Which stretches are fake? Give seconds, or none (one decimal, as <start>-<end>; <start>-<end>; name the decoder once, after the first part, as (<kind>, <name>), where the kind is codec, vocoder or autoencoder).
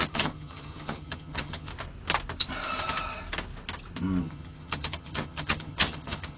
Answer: 0.0-1.7 (vocoder, HiFi-GAN); 4.2-6.4